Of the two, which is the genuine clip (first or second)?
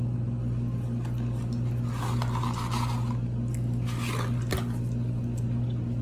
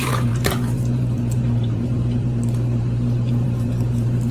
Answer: first